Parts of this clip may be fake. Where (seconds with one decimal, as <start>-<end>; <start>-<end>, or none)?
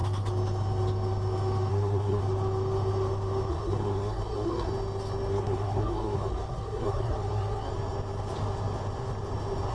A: 1.7-2.2; 3.5-4.7; 5.3-7.7